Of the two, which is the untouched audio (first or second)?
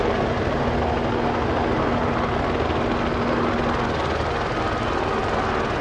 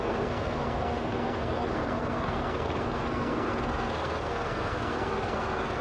first